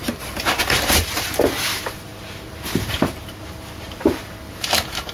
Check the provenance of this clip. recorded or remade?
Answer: remade